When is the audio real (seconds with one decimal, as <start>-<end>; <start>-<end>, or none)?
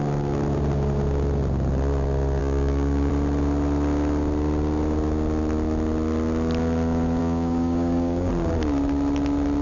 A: 0.0-2.4; 3.1-7.2; 8.3-9.6